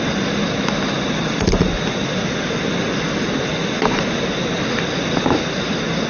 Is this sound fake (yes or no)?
no